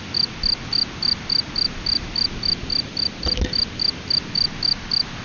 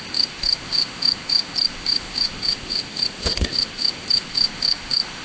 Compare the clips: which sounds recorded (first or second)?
first